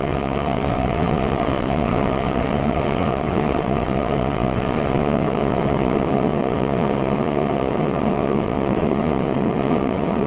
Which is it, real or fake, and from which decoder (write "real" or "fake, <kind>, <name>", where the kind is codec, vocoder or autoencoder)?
fake, vocoder, WaveNeXt